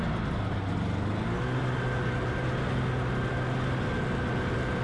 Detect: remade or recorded recorded